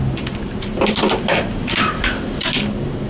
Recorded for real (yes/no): yes